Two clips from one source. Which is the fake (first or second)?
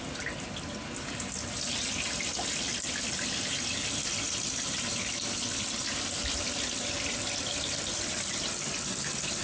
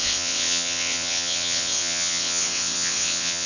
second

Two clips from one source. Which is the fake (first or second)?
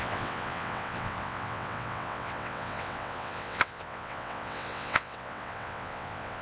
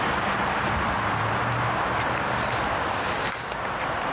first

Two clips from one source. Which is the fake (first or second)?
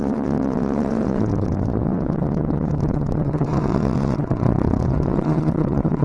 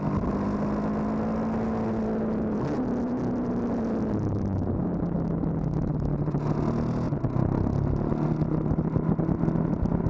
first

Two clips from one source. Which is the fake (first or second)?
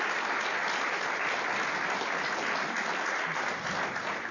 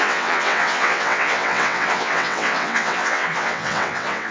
second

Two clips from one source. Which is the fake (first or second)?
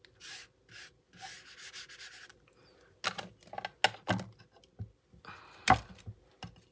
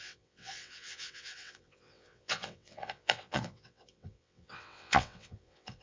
second